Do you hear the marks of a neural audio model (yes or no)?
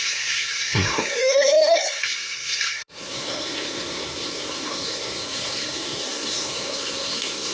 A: yes